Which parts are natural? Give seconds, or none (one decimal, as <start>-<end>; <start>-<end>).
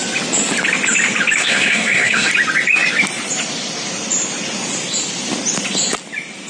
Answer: 0.0-1.4; 2.3-6.5